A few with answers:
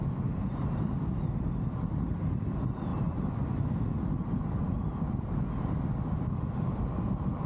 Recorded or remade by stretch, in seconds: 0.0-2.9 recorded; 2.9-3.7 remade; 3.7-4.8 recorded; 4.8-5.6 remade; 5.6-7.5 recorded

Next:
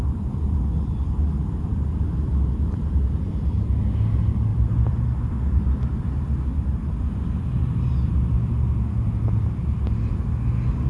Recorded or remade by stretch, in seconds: 0.0-4.5 recorded; 4.5-8.6 remade; 8.6-10.9 recorded

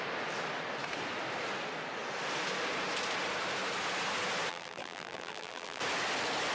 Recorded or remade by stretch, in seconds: 0.0-4.5 recorded; 4.5-5.8 remade; 5.8-6.5 recorded

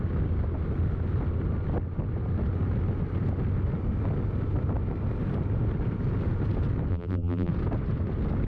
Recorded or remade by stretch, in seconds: 0.0-6.9 recorded; 6.9-7.5 remade; 7.5-8.5 recorded

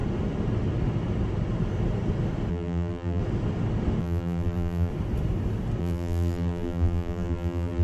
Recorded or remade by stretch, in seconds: 0.0-2.5 recorded; 2.5-3.2 remade; 3.2-4.0 recorded; 4.0-4.9 remade; 4.9-5.8 recorded; 5.8-7.8 remade